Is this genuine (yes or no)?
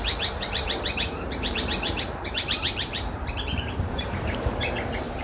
no